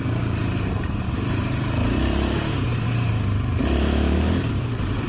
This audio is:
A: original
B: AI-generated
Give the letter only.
B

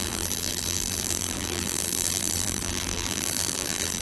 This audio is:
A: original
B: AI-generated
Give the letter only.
B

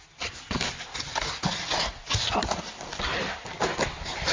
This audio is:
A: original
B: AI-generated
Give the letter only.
A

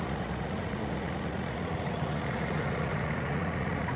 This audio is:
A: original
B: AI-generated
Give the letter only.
B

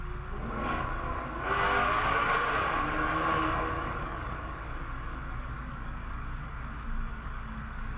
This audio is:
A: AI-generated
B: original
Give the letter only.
A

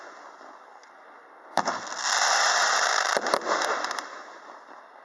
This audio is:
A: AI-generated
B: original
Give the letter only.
B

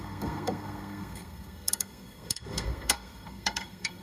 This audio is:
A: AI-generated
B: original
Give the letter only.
A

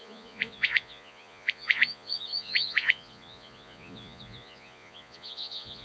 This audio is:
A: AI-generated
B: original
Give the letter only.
A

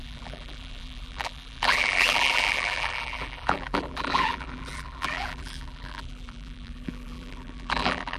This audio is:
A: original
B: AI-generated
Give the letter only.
B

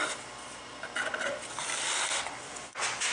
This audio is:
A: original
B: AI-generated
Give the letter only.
A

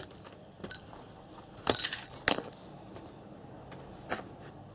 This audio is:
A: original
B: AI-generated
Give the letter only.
A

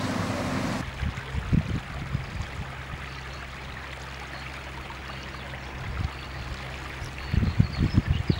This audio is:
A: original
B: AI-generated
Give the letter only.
A